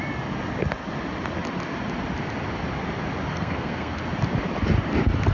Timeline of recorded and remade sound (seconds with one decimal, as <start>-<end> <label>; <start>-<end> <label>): 0.0-3.3 recorded; 3.3-4.0 remade; 4.0-5.3 recorded